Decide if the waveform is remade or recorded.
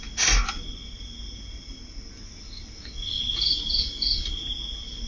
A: recorded